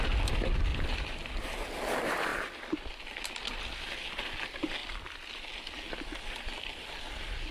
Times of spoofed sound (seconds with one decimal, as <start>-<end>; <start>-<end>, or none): 0.7-1.3; 2.3-3.6; 4.8-6.8